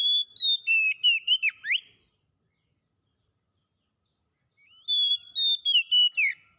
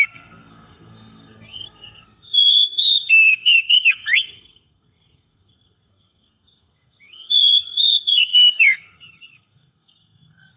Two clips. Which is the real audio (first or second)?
first